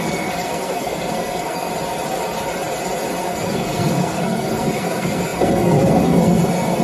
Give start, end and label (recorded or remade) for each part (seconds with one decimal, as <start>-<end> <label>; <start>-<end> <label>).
0.0-1.7 remade; 1.7-3.2 recorded; 3.2-6.8 remade